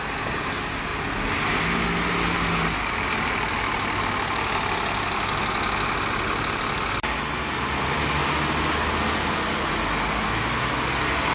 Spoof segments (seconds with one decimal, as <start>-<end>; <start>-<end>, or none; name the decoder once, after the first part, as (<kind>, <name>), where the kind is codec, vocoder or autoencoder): none